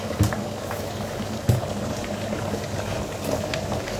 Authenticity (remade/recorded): remade